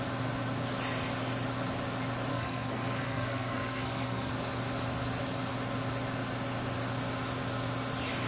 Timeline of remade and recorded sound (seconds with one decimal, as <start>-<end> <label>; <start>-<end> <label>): 0.0-2.3 recorded; 2.3-4.3 remade; 4.3-8.3 recorded